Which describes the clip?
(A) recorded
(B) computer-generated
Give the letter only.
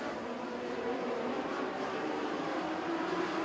B